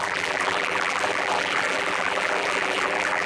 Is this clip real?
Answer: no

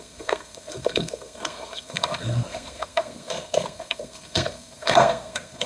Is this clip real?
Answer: no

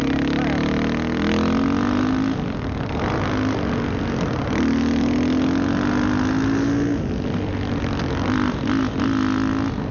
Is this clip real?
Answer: yes